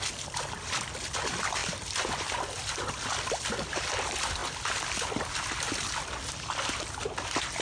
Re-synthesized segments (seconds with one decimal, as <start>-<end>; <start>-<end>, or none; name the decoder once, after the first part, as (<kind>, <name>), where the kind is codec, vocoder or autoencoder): none